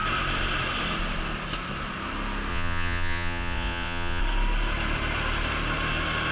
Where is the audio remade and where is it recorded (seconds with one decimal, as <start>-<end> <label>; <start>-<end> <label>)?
0.0-2.5 recorded; 2.5-4.2 remade; 4.2-6.3 recorded

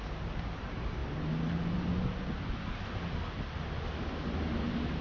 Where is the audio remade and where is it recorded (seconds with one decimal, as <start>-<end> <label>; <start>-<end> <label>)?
0.0-5.0 recorded

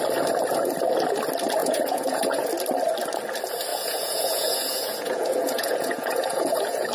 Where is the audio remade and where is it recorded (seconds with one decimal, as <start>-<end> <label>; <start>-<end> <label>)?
0.0-1.6 recorded; 1.6-2.5 remade; 2.5-3.7 recorded; 3.7-6.9 remade

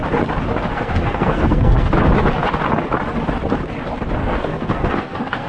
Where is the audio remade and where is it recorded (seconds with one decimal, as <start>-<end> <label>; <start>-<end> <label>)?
0.0-0.7 recorded; 0.7-1.9 remade; 1.9-4.2 recorded; 4.2-5.5 remade

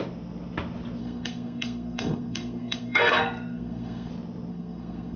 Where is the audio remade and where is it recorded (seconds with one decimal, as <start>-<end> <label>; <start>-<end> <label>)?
0.0-1.0 recorded; 1.0-4.1 remade; 4.1-4.5 recorded; 4.5-5.2 remade

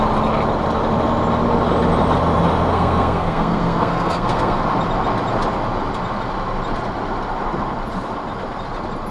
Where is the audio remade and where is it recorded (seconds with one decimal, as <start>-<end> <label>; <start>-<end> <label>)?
0.0-2.7 recorded; 2.7-4.6 remade; 4.6-9.1 recorded